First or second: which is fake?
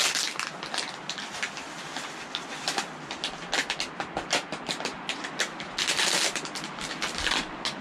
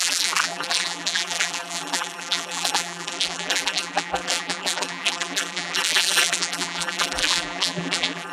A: second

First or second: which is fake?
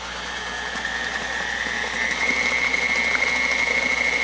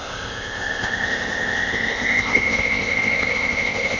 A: second